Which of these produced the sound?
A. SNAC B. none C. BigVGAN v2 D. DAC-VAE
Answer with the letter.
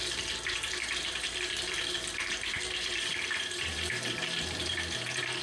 C